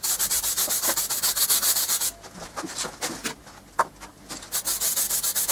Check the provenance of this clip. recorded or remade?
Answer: recorded